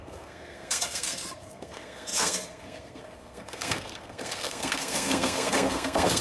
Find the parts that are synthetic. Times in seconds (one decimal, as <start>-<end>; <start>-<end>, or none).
0.0-6.2